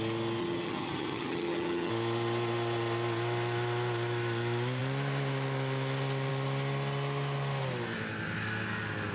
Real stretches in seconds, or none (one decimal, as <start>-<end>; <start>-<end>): 0.0-0.4; 1.9-9.1